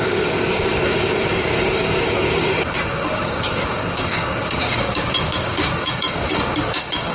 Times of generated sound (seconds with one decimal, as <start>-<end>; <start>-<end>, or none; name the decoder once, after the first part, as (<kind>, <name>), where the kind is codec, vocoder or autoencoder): 0.0-7.1 (codec, DAC)